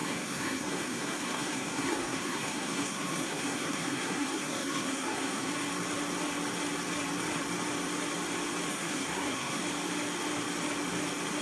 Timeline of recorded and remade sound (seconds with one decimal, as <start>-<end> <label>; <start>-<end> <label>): 0.0-5.5 remade; 5.5-8.7 recorded; 8.7-9.6 remade; 9.6-11.4 recorded